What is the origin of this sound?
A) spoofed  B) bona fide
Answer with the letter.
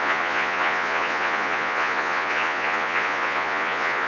A